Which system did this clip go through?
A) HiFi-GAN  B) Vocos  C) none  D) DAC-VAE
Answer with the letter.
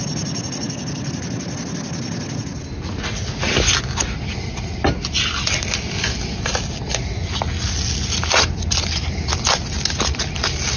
C